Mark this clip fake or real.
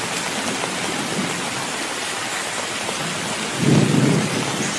real